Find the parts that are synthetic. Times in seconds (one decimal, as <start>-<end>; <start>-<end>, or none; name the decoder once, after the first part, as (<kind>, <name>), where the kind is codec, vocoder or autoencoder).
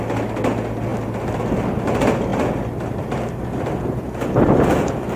none